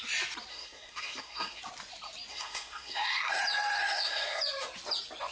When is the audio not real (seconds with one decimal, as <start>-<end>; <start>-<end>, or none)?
0.5-1.6; 2.3-3.4; 3.8-4.4

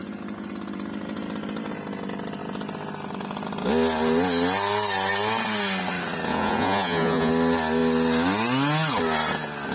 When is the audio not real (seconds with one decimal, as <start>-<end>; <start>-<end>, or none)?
6.3-7.3

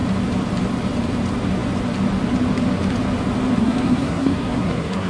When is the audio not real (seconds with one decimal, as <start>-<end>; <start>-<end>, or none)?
3.6-5.1

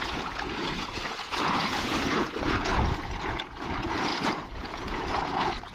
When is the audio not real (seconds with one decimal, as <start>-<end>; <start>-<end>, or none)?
0.0-5.7

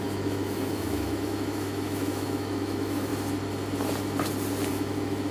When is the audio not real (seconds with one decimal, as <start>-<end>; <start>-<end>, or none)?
0.0-3.1; 4.7-5.3